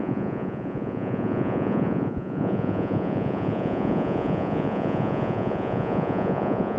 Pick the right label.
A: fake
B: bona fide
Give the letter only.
A